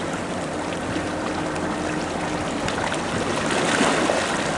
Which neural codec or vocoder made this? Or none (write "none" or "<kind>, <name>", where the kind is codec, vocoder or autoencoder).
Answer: none